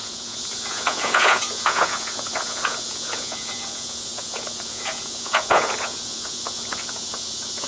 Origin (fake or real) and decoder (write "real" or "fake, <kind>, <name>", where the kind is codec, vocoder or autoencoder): fake, vocoder, Vocos